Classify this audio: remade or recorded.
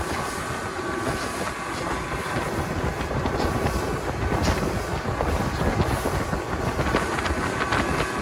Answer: recorded